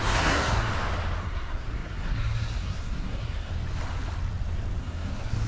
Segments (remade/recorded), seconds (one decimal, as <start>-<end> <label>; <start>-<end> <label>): 0.0-0.7 remade; 0.7-1.2 recorded; 1.2-3.5 remade; 3.5-4.8 recorded; 4.8-5.5 remade